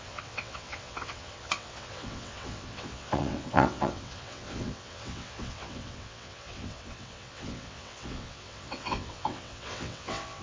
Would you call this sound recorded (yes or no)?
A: no